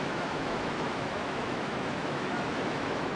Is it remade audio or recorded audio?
remade